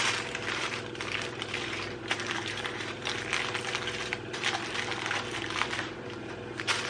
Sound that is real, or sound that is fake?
real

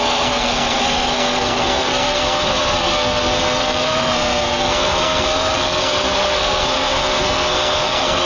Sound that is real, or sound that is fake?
fake